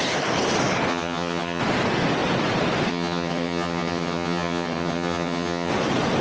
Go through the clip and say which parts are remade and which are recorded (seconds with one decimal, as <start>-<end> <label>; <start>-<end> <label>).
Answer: 0.0-0.9 recorded; 0.9-1.6 remade; 1.6-2.9 recorded; 2.9-5.7 remade; 5.7-6.2 recorded